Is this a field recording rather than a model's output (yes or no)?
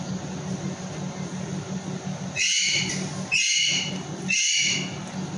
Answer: yes